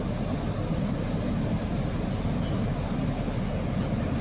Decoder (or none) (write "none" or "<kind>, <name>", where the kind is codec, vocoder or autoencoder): none